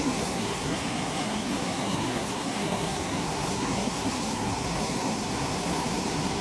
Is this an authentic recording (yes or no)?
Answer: no